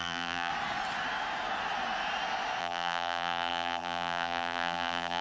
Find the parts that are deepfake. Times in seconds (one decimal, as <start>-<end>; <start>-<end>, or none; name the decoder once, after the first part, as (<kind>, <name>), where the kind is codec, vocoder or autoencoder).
0.0-0.5 (vocoder, BigVGAN v2); 2.6-5.2